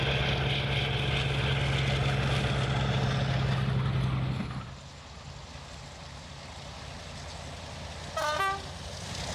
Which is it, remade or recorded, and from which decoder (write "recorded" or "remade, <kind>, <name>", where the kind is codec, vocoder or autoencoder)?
recorded